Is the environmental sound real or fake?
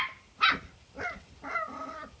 real